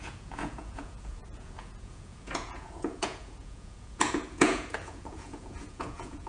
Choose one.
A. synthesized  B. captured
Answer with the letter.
A